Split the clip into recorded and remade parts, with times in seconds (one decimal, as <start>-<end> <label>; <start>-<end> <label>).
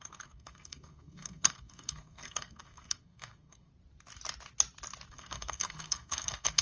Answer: 0.0-3.7 remade; 3.7-5.1 recorded; 5.1-6.6 remade